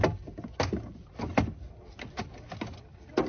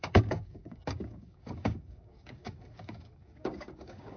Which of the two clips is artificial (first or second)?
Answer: second